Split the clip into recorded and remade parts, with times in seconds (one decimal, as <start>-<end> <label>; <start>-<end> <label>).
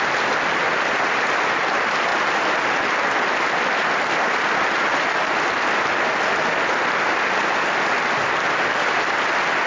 0.0-9.7 recorded